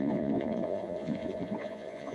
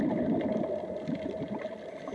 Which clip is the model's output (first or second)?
first